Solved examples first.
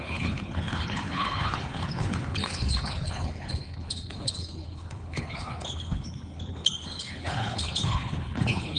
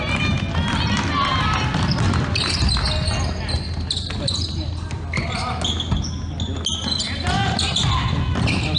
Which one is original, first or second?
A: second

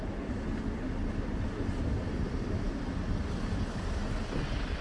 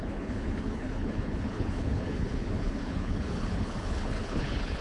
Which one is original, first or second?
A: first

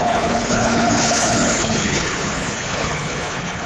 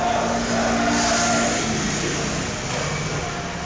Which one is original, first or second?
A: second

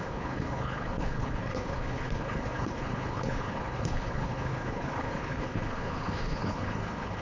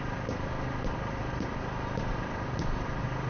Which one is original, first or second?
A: second